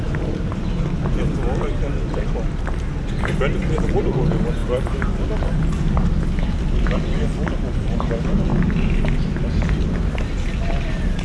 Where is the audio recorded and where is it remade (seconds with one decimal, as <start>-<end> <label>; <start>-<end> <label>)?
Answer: 0.0-11.2 recorded